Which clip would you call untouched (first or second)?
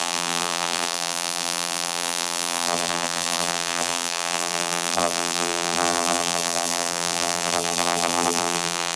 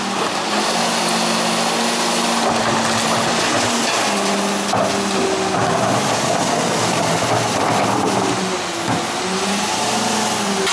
second